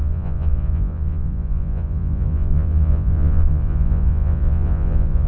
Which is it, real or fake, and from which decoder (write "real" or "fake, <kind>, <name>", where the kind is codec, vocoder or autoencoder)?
fake, vocoder, Vocos